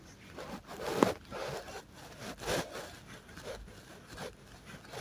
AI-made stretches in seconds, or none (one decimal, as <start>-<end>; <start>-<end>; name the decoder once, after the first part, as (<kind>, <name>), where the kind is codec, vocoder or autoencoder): none